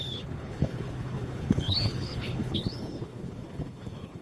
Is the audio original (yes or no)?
no